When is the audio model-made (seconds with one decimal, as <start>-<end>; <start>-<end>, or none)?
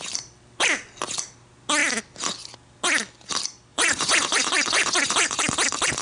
3.7-5.4